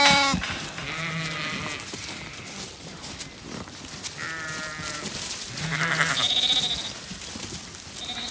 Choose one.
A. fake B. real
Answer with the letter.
B